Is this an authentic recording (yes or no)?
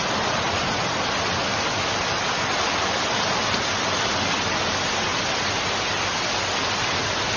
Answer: yes